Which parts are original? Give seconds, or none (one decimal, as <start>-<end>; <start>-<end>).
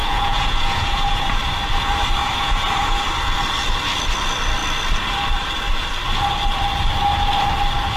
1.4-2.2; 3.0-8.0